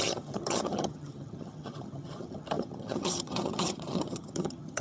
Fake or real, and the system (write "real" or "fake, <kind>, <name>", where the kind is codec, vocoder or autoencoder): fake, vocoder, HiFi-GAN